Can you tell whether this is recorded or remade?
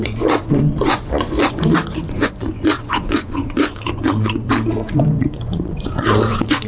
remade